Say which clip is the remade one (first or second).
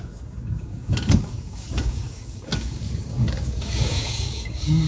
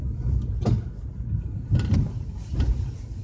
first